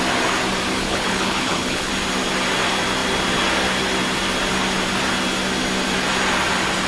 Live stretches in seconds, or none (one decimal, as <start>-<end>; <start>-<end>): 0.0-0.8; 1.9-6.9